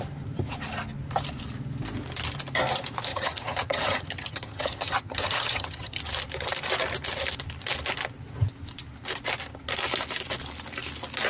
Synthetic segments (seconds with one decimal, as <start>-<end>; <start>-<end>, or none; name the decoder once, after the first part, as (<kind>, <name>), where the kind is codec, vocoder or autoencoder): 3.1-6.0 (vocoder, HiFi-GAN)